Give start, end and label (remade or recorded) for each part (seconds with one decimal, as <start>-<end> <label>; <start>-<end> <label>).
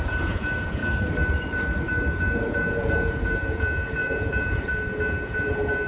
0.0-0.8 remade; 0.8-2.2 recorded; 2.2-5.9 remade